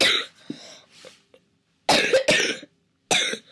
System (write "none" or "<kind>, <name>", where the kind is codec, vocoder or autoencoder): none